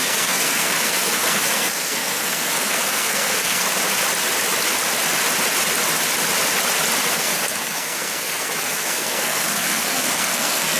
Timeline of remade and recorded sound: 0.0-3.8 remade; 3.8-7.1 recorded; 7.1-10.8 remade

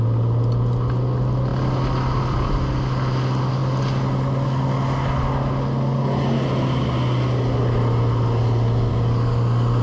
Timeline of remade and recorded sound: 0.0-9.8 recorded

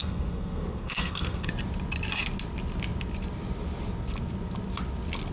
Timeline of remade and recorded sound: 0.0-1.5 remade; 1.5-5.3 recorded